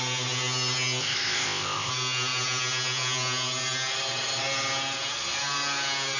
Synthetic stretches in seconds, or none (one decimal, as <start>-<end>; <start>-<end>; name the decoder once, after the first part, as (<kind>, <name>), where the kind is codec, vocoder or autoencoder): 1.0-1.9 (codec, ZipCodec)